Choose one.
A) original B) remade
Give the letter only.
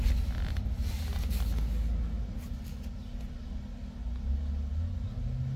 A